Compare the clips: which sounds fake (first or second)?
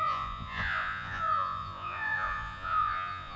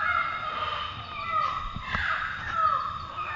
first